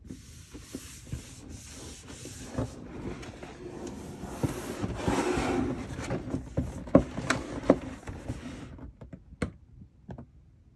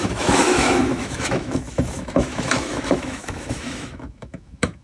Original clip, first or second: first